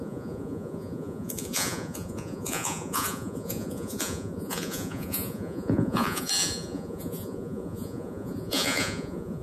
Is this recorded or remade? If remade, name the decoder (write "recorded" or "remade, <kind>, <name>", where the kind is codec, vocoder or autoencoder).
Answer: remade, vocoder, Vocos